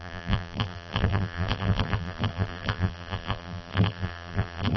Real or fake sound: fake